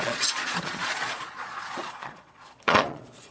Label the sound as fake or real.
fake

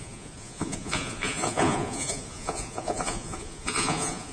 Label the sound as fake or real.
fake